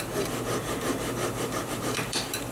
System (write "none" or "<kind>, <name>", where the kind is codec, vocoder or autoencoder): vocoder, BigVGAN v2